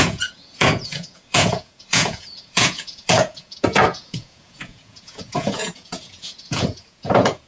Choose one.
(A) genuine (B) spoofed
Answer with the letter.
B